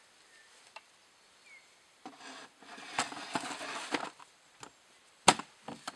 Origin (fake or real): real